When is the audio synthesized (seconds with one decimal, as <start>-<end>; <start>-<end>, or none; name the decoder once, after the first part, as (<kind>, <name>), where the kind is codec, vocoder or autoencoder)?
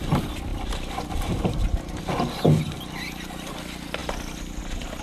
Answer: none